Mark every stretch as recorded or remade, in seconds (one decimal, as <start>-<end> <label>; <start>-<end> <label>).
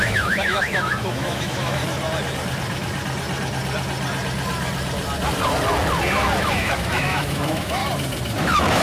0.0-1.8 remade; 1.8-6.5 recorded; 6.5-7.8 remade; 7.8-8.4 recorded; 8.4-8.8 remade